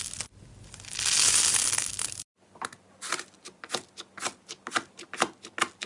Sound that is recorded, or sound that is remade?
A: recorded